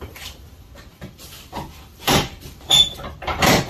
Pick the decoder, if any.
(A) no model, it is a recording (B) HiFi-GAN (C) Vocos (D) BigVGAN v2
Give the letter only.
D